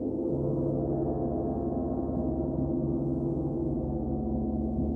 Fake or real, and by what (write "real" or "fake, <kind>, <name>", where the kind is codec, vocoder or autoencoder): real